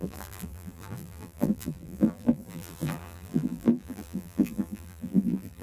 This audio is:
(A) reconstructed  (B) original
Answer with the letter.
A